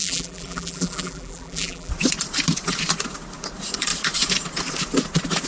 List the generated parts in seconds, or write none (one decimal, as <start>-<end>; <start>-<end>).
0.0-1.9